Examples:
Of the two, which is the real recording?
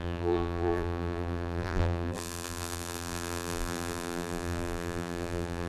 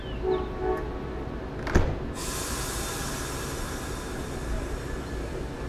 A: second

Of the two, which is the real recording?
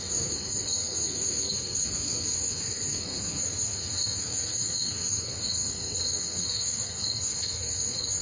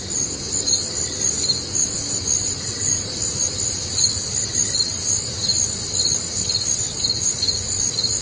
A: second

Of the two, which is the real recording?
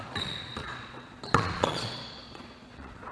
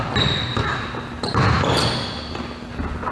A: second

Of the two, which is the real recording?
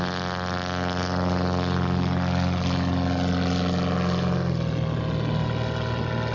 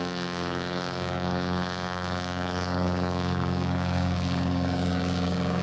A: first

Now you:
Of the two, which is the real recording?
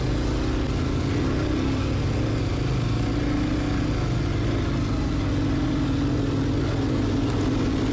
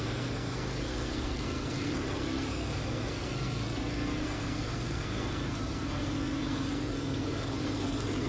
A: first